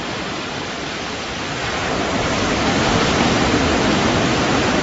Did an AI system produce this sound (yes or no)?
yes